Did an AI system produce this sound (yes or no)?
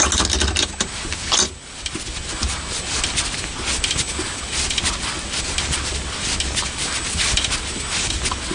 no